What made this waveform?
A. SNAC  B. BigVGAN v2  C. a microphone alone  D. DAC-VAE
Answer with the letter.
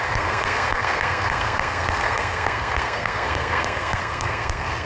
A